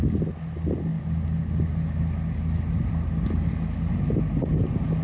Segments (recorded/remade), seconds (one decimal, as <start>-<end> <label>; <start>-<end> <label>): 0.0-5.0 recorded